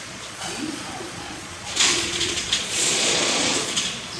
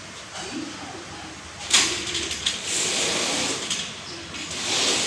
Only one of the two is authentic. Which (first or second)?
second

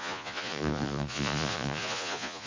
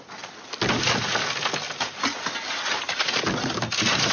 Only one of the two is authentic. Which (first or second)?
second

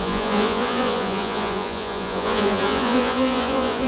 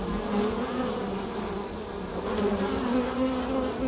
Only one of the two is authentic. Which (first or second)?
second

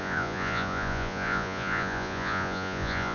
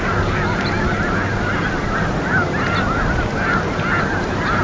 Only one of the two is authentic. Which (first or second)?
second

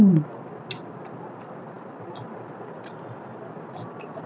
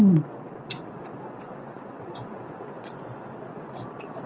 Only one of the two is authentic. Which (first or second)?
first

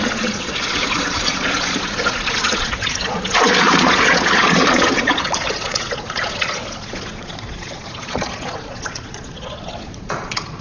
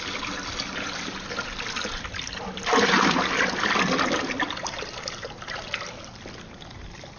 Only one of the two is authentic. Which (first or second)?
second